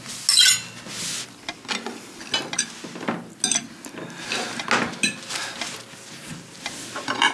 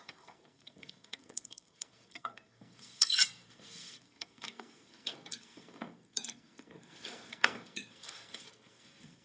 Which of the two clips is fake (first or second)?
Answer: second